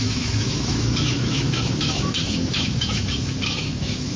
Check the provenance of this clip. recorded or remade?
remade